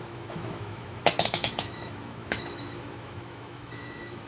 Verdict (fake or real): fake